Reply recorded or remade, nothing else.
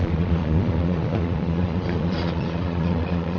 remade